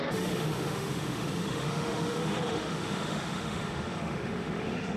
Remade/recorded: remade